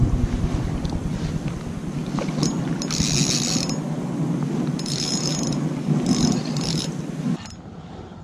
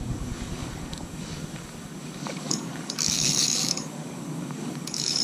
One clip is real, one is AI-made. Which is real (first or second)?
first